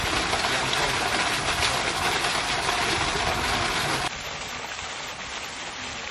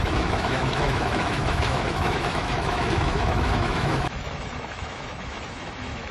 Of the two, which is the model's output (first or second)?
second